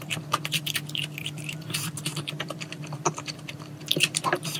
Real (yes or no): no